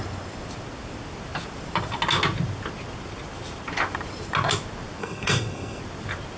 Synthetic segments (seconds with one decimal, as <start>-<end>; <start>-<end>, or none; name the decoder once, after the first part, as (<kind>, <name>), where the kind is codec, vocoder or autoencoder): 5.0-5.8 (codec, SNAC)